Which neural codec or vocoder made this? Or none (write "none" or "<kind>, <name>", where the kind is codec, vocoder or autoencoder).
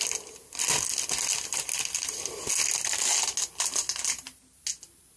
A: none